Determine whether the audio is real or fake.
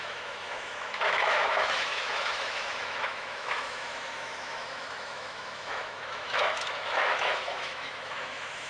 fake